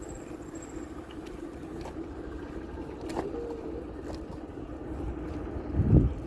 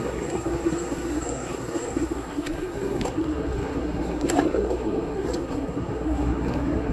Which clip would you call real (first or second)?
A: first